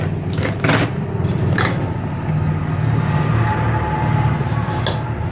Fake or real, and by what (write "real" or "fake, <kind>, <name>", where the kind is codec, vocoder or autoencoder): real